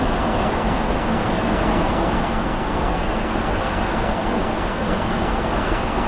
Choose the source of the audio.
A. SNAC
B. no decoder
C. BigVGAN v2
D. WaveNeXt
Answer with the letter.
A